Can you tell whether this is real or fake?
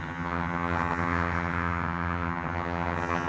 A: fake